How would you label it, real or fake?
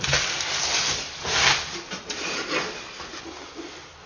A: real